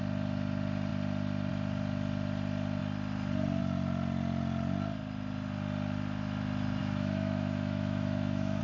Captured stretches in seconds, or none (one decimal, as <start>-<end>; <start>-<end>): 0.0-6.8